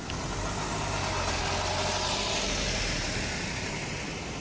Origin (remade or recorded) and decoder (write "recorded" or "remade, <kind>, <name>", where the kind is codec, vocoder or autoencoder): recorded